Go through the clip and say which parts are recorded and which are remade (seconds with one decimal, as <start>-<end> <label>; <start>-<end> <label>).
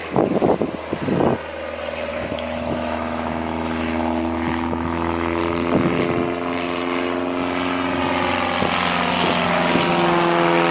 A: 0.0-2.1 recorded; 2.1-5.4 remade; 5.4-10.7 recorded